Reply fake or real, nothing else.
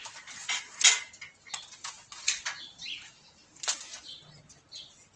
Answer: real